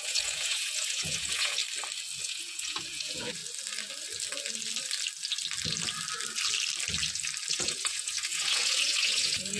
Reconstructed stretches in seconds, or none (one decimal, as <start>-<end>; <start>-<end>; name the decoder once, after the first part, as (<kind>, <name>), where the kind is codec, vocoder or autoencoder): 0.0-1.6 (vocoder, Vocos); 2.2-3.4; 7.5-9.6